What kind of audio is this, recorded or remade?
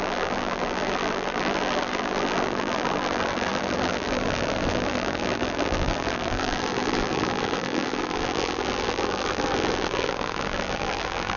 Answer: remade